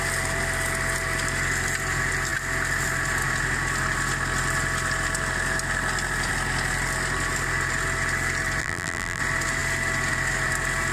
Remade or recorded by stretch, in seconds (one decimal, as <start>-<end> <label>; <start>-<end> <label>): 0.0-8.6 recorded; 8.6-9.2 remade; 9.2-10.9 recorded